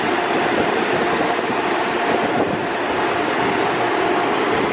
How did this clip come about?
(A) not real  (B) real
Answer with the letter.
B